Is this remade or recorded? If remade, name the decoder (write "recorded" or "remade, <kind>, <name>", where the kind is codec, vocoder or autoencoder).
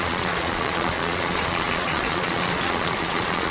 remade, vocoder, Vocos